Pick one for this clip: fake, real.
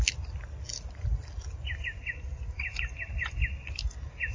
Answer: real